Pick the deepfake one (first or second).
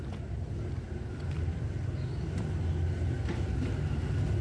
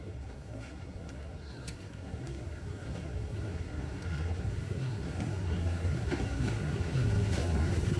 second